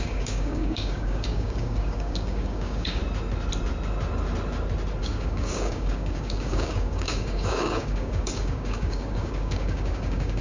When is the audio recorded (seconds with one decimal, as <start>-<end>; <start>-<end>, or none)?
3.0-5.0

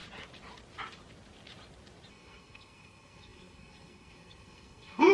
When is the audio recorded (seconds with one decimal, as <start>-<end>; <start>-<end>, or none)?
0.0-2.1

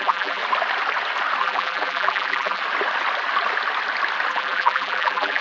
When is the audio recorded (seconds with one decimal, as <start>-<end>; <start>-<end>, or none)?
0.4-1.4; 2.6-4.3

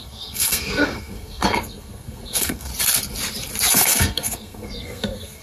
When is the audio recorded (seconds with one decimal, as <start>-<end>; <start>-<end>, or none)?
2.7-3.7